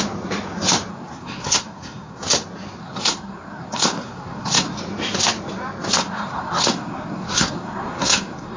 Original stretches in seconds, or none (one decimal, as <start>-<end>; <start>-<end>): 0.0-0.9; 2.2-2.8; 4.8-6.0